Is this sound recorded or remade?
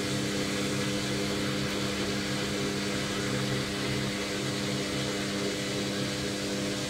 recorded